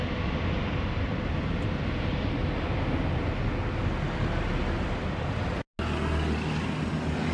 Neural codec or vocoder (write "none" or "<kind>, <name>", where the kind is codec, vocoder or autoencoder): none